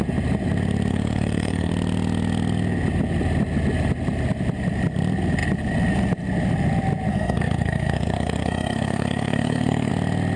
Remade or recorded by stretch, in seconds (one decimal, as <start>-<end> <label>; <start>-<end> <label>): 0.0-0.9 recorded; 0.9-1.7 remade; 1.7-7.1 recorded; 7.1-9.9 remade; 9.9-10.4 recorded